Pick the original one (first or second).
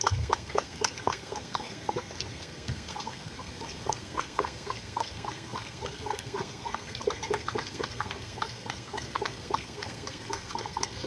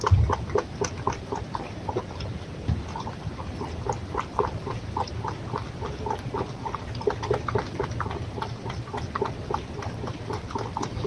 second